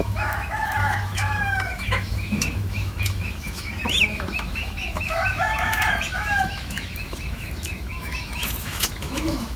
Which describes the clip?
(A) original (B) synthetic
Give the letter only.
B